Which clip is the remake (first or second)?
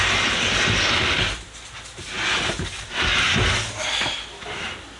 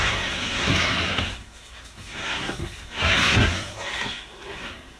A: second